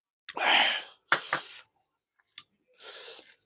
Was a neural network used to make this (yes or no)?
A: no